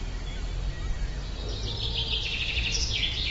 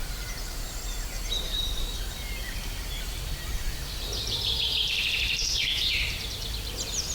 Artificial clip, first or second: second